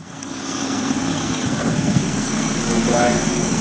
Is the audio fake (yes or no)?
yes